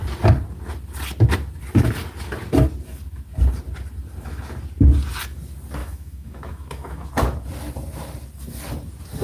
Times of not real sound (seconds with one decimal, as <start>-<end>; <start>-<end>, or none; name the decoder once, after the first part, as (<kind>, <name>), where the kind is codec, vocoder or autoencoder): 5.8-7.1 (autoencoder, DAC-VAE)

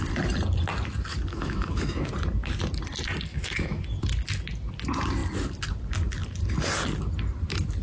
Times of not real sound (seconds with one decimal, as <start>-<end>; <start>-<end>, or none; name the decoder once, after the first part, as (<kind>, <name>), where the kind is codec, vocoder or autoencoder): 1.3-2.1 (autoencoder, DAC-VAE); 3.3-3.8

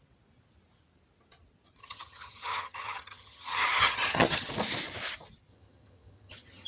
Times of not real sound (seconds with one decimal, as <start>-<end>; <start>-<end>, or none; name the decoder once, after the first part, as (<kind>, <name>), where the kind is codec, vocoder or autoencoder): 1.8-4.5 (vocoder, HiFi-GAN); 5.5-6.7